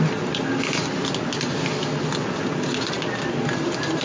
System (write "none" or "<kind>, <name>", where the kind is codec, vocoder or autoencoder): none